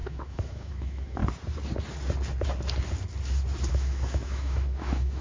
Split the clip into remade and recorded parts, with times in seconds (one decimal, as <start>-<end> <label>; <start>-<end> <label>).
0.0-1.2 remade; 1.2-3.7 recorded; 3.7-5.2 remade